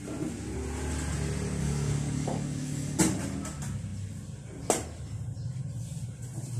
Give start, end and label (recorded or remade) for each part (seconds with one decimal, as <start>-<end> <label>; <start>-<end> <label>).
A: 0.0-1.6 recorded; 1.6-3.0 remade; 3.0-6.6 recorded